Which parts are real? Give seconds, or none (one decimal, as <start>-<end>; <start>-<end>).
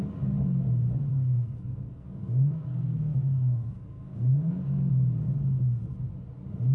0.0-1.1; 4.9-6.7